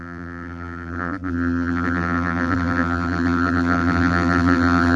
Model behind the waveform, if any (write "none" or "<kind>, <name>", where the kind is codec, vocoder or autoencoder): vocoder, BigVGAN v2